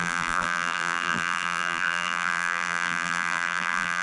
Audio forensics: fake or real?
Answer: fake